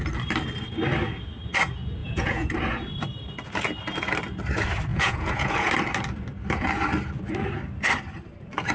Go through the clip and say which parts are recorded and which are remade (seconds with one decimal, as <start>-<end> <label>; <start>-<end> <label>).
0.0-2.0 recorded; 2.0-2.5 remade; 2.5-4.9 recorded; 4.9-5.7 remade; 5.7-8.7 recorded